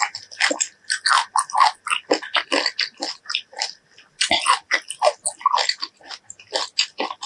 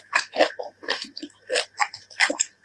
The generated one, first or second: second